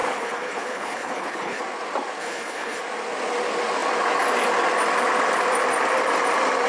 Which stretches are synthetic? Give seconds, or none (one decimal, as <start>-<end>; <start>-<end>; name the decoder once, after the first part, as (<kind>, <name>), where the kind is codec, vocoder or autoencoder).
0.0-1.6 (codec, HILCodec); 2.2-2.8

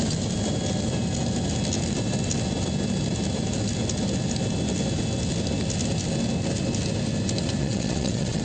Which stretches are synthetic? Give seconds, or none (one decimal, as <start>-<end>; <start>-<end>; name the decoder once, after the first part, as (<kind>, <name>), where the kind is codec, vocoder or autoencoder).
7.6-8.4 (vocoder, WaveNeXt)

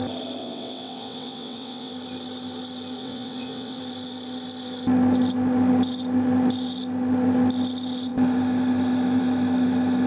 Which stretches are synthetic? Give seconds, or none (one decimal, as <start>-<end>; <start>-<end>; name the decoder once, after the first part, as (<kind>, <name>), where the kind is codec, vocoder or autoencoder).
0.4-1.9 (vocoder, WaveNeXt); 3.0-3.8

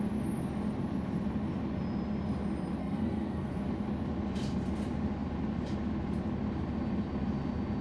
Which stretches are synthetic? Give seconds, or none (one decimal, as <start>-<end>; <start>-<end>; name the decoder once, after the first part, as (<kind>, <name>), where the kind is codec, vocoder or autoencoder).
2.8-3.6 (codec, SNAC)

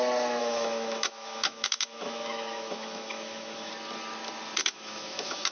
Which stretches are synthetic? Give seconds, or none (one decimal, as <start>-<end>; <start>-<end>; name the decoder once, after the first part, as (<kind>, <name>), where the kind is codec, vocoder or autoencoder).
0.4-3.7 (autoencoder, DAC-VAE); 4.6-5.5

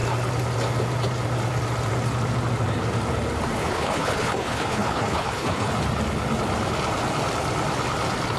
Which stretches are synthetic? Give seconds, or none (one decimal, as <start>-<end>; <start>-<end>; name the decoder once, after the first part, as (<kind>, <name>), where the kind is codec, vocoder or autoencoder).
3.6-5.7 (codec, HILCodec)